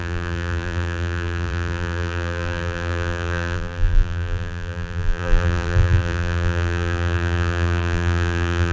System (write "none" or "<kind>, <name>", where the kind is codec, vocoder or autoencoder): vocoder, BigVGAN v2